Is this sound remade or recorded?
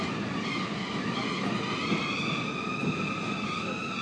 recorded